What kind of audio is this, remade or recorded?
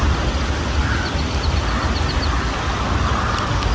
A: recorded